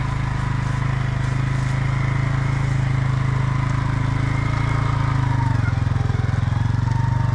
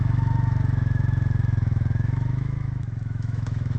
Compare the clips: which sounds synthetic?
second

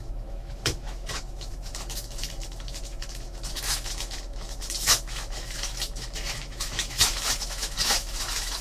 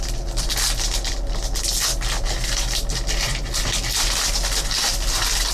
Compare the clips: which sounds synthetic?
first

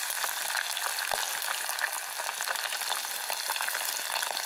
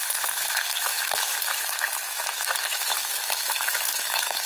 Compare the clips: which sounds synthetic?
second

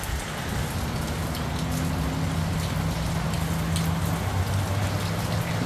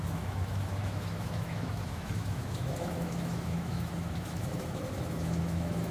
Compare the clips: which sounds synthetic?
second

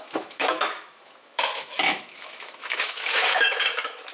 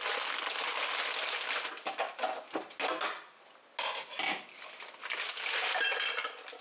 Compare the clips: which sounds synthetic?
first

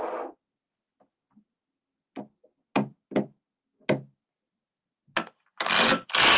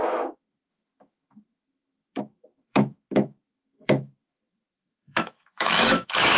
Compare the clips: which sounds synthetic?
second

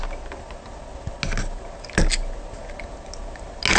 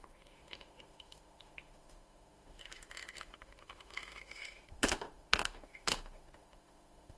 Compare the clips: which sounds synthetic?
second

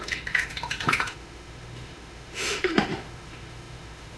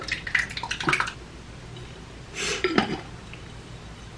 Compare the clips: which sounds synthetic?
first